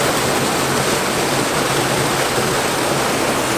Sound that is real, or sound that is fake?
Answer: real